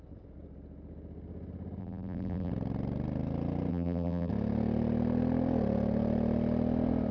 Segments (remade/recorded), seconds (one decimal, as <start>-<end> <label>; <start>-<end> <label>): 0.0-1.8 recorded; 1.8-2.5 remade; 2.5-3.7 recorded; 3.7-4.3 remade; 4.3-7.1 recorded